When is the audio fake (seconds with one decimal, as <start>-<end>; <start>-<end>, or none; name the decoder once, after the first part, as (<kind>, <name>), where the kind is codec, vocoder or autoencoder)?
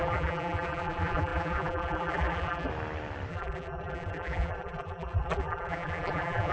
0.0-2.7 (vocoder, BigVGAN v2); 3.3-6.5